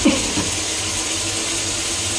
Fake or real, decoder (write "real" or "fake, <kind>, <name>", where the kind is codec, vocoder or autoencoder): real